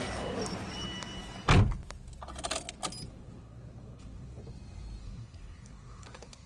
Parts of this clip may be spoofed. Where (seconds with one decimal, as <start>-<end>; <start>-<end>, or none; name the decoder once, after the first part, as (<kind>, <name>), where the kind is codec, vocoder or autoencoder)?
3.1-4.4 (codec, SNAC); 5.0-6.5